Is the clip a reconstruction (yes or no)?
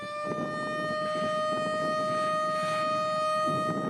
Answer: no